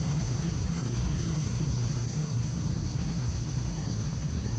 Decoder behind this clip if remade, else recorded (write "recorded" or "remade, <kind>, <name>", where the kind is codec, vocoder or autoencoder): remade, codec, SNAC